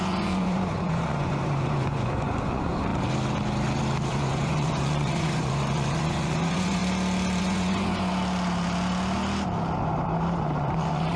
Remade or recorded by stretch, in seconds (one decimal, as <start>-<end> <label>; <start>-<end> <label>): 0.0-2.9 remade; 2.9-4.1 recorded; 4.1-6.8 remade; 6.8-7.4 recorded; 7.4-8.1 remade; 8.1-10.6 recorded; 10.6-11.2 remade